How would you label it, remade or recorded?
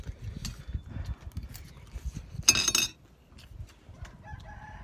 recorded